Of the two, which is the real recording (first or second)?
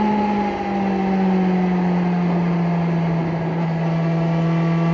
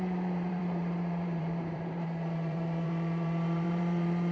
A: first